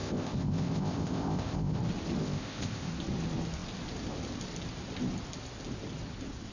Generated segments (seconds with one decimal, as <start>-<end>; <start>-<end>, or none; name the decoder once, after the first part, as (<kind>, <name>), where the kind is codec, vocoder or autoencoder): 0.0-1.8 (codec, ZipCodec); 2.2-2.9